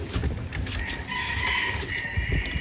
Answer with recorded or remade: recorded